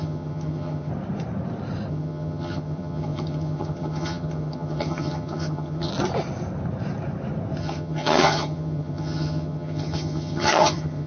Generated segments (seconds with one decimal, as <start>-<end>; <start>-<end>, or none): 0.0-0.9; 1.9-5.9; 7.6-11.1